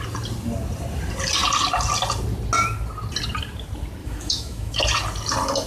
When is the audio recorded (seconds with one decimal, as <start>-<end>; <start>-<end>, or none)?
0.0-4.0; 4.8-5.7